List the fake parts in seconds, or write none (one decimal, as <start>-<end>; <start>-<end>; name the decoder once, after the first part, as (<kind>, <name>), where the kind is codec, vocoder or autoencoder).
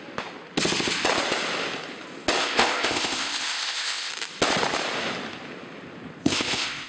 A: 2.4-4.1 (codec, ZipCodec); 6.2-6.9